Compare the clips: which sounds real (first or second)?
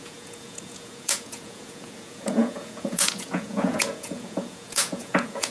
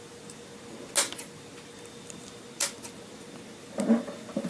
second